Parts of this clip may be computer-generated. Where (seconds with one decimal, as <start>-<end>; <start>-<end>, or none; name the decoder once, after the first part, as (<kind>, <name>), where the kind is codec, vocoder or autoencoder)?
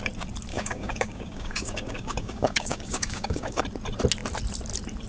0.5-3.6 (codec, DAC)